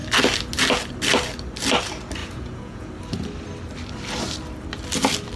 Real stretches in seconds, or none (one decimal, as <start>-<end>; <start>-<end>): 0.0-2.2; 2.9-5.4

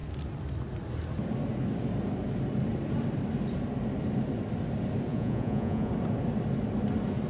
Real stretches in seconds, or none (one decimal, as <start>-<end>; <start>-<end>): 0.0-5.1; 5.9-7.3

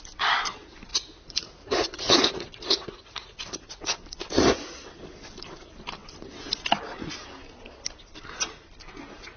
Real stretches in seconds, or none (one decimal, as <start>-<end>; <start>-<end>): 0.0-0.9; 3.8-9.4

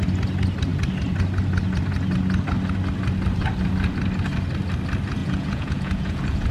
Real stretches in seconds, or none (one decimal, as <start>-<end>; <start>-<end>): 0.0-5.2

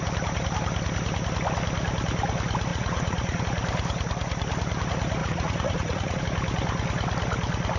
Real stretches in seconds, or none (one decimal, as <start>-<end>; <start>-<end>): 0.0-2.7; 3.4-5.2; 6.2-7.8